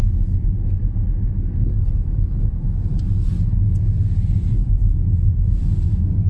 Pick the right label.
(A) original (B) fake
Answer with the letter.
A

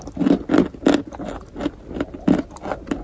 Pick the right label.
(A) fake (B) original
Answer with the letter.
B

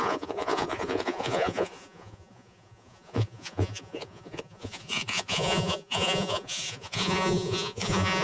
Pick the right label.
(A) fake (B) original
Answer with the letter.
A